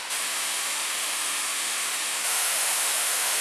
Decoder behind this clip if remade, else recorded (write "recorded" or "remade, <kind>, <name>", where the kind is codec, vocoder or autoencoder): remade, autoencoder, DAC-VAE